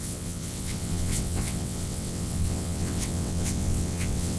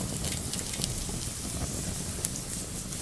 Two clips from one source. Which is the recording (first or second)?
second